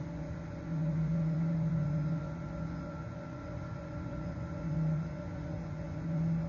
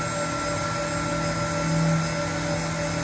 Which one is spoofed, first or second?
first